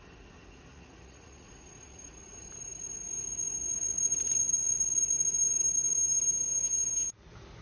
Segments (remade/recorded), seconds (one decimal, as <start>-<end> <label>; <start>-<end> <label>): 0.0-0.7 recorded; 0.7-2.5 remade; 2.5-3.6 recorded; 3.6-5.0 remade; 5.0-7.6 recorded